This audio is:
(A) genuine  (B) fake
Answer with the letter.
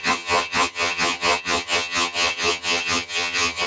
B